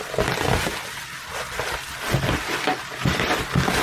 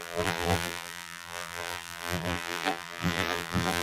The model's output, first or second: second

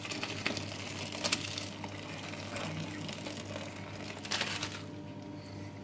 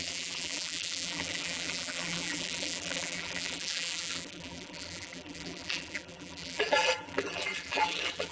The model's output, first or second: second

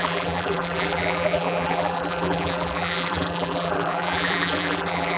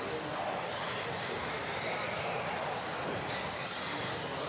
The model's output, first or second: first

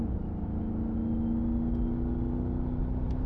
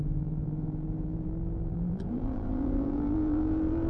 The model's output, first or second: second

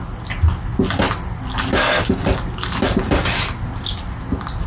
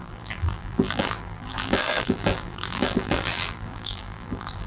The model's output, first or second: second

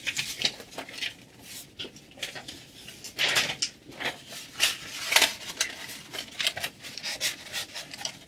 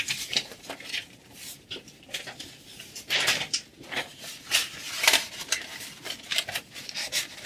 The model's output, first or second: second